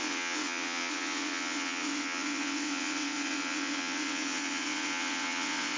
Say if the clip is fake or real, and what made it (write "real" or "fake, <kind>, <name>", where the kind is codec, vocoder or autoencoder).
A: fake, vocoder, WaveNeXt